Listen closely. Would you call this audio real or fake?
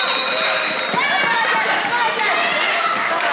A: real